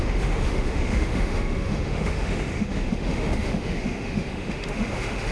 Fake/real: fake